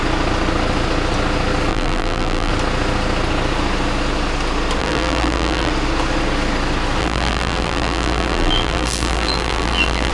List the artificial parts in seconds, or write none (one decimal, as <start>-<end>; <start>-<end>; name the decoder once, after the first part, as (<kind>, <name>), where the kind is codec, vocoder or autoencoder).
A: 1.7-2.5 (vocoder, BigVGAN v2); 4.8-5.7; 7.0-10.1